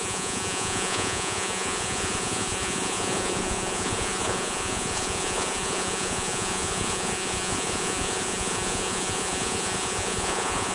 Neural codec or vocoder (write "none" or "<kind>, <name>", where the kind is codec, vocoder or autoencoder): vocoder, Vocos